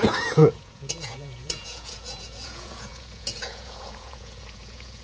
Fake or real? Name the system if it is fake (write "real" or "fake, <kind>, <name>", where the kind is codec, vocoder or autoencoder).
fake, vocoder, Vocos